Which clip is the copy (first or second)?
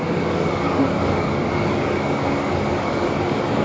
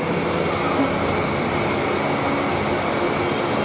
first